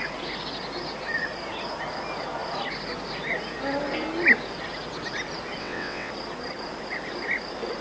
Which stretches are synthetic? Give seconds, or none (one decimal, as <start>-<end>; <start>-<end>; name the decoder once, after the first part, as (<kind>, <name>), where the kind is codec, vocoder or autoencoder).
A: 5.6-6.1 (vocoder, WaveNeXt)